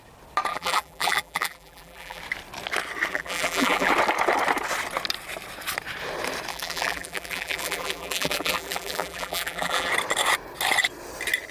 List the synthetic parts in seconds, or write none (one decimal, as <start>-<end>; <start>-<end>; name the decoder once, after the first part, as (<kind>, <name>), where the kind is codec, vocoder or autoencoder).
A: 0.5-2.2 (vocoder, BigVGAN v2); 3.1-3.9; 6.5-9.9